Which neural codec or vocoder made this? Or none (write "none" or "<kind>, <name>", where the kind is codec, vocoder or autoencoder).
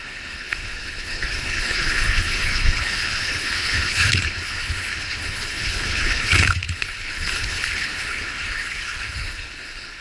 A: codec, HILCodec